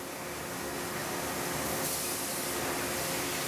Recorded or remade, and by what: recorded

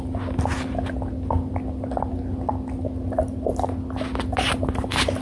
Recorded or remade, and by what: recorded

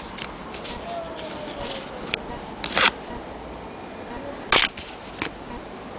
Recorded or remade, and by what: recorded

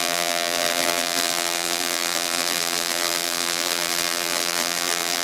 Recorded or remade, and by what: remade, vocoder, BigVGAN v2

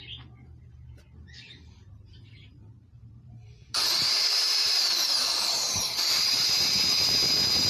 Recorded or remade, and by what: remade, vocoder, BigVGAN v2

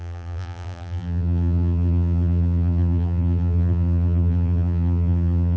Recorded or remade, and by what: remade, vocoder, BigVGAN v2